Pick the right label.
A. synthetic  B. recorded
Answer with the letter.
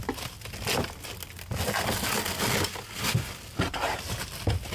B